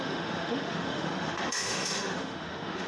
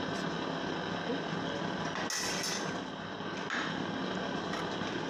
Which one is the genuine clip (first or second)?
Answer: second